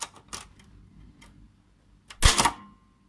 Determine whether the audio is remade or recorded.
recorded